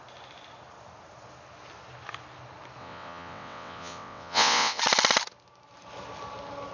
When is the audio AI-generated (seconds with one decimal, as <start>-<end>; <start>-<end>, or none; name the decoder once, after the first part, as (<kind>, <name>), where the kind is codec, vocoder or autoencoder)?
2.8-4.8 (vocoder, WaveNeXt)